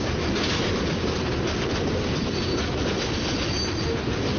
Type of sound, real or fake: real